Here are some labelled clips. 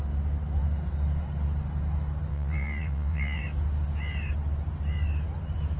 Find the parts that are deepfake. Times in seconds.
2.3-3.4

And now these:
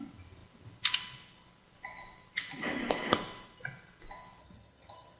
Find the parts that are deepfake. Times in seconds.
4.4-5.2